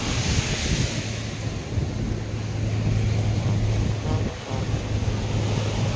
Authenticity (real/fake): real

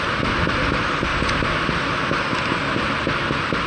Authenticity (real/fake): real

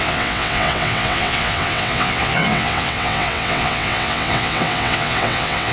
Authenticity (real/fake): fake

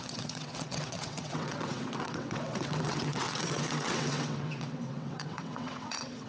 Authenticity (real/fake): fake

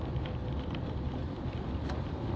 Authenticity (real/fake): real